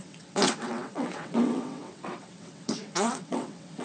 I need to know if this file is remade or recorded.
remade